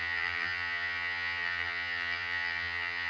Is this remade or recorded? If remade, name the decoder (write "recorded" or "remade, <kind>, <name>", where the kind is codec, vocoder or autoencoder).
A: remade, vocoder, HiFi-GAN